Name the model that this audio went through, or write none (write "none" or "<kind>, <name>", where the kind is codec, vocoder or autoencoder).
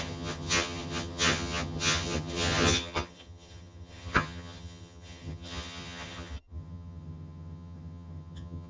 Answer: vocoder, HiFi-GAN